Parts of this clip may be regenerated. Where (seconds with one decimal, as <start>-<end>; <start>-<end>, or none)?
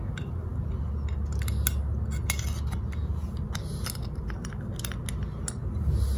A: none